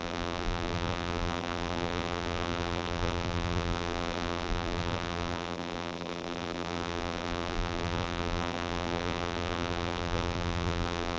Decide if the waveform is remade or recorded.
remade